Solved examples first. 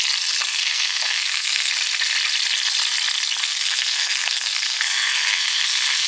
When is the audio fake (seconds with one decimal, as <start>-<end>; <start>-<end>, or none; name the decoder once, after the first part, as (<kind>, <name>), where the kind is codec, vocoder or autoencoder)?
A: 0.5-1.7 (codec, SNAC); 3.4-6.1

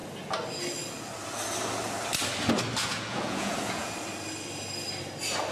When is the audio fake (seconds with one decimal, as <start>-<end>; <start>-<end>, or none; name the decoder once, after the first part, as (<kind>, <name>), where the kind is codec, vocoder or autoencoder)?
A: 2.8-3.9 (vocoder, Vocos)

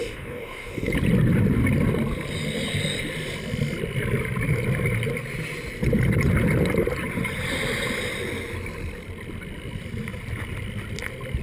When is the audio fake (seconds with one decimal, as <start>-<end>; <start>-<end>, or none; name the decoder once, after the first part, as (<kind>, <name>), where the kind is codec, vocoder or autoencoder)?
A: 0.0-0.9 (codec, DAC)